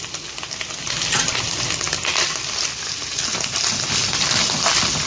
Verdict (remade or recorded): recorded